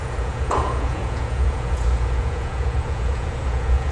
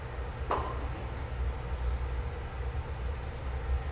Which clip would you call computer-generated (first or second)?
first